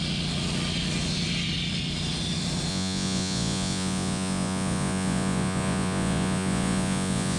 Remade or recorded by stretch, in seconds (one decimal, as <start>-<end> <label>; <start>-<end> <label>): 0.0-2.7 recorded; 2.7-7.4 remade